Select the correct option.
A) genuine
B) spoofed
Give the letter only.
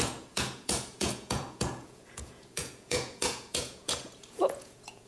B